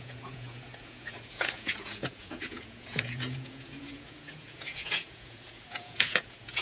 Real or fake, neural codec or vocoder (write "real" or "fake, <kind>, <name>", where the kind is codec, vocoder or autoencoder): fake, vocoder, Vocos